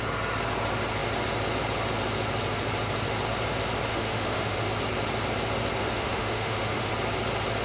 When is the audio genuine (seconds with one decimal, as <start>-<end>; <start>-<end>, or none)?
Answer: 0.0-3.9; 4.7-5.8; 6.9-7.6